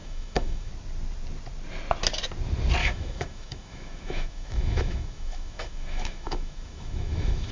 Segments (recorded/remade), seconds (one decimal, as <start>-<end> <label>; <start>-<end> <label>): 0.0-0.7 remade; 0.7-2.8 recorded; 2.8-7.5 remade